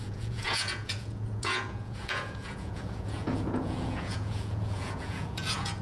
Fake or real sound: fake